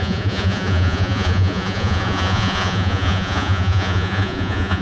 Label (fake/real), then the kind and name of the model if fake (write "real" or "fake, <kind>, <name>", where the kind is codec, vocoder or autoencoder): fake, vocoder, Vocos